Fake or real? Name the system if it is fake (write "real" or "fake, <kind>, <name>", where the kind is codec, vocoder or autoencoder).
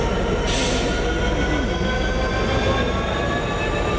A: real